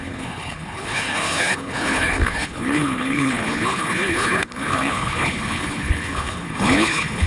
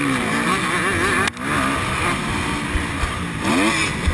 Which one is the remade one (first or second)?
first